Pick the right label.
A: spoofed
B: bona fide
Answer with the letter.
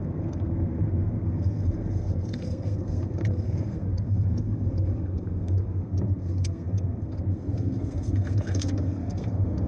A